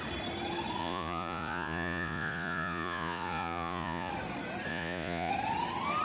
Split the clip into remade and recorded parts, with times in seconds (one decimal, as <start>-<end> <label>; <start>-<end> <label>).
0.0-0.8 recorded; 0.8-4.1 remade; 4.1-4.7 recorded; 4.7-5.3 remade; 5.3-6.0 recorded